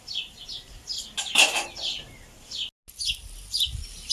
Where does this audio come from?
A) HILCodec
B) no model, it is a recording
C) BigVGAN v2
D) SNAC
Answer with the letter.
B